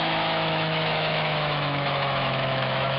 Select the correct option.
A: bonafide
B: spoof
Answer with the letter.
B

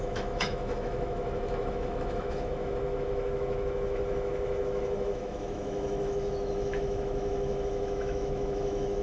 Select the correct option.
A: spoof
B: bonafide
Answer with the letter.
A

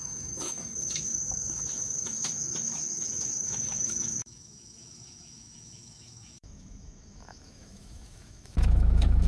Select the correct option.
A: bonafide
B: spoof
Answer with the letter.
B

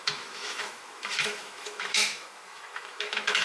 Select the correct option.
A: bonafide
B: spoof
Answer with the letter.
B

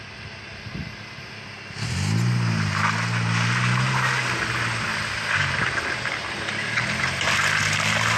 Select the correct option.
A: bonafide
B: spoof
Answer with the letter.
A